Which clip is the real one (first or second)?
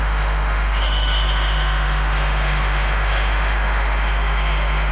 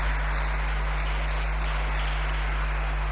second